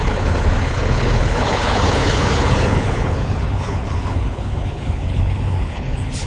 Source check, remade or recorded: remade